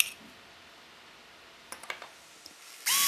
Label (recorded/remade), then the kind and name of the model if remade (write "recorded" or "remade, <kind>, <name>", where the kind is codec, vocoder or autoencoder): recorded